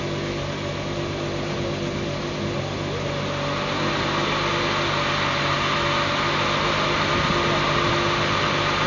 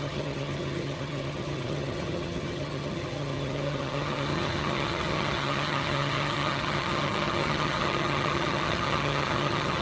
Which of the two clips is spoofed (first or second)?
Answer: second